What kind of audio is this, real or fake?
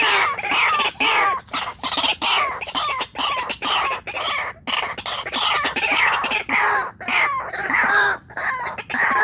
real